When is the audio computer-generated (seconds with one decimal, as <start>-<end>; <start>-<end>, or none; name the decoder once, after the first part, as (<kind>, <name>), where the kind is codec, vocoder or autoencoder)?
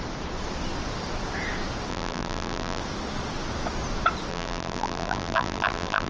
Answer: 1.9-2.8 (vocoder, BigVGAN v2); 4.3-6.1